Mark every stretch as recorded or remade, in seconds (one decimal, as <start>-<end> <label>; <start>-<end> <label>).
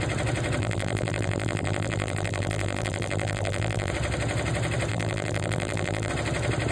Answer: 0.0-0.6 recorded; 0.6-3.9 remade; 3.9-4.9 recorded; 4.9-6.1 remade; 6.1-6.7 recorded